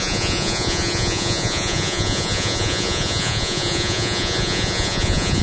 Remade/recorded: remade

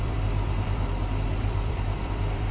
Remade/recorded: remade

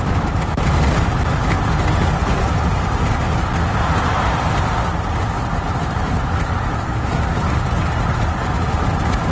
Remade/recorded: recorded